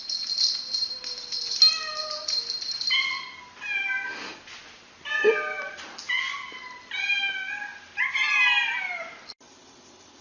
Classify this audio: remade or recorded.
recorded